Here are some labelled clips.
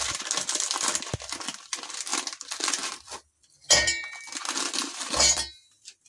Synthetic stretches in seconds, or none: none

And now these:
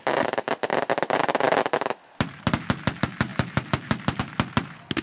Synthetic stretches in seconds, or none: none

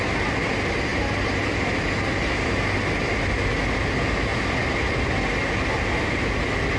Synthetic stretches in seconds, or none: none

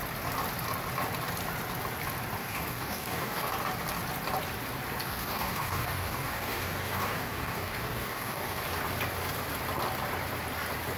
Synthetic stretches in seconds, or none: 2.4-3.5 (codec, DAC); 5.0-8.6

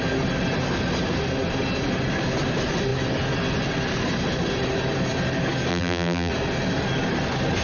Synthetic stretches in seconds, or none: 5.7-6.3 (vocoder, BigVGAN v2)

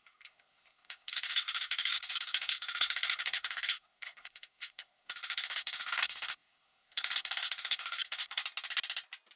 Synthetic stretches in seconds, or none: 0.0-8.4 (codec, SNAC)

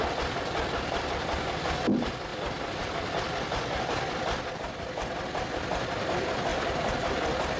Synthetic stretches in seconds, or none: 0.0-2.3 (vocoder, BigVGAN v2); 2.8-6.5

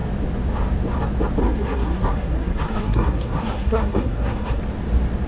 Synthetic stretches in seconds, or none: 1.4-4.6 (codec, SNAC)